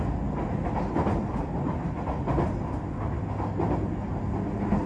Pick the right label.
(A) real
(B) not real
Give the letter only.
A